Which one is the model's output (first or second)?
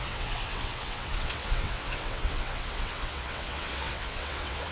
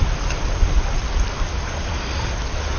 first